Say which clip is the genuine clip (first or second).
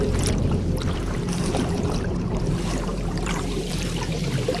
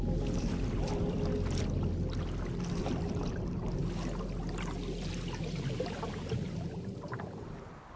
second